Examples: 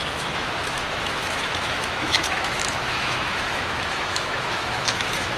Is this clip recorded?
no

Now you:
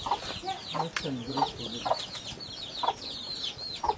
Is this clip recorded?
yes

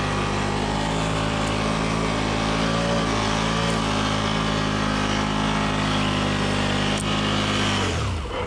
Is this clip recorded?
yes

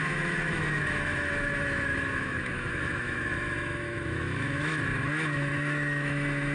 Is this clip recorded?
no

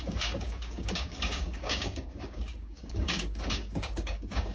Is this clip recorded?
no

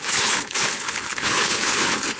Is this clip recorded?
no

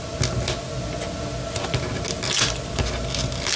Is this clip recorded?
yes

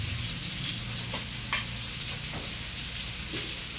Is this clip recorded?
yes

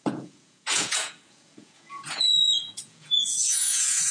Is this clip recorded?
no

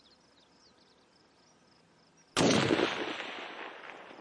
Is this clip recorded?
yes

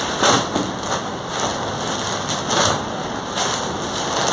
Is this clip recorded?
yes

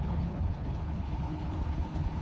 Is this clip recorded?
no